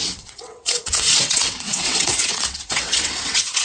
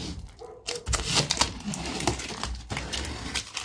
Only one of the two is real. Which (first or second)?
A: second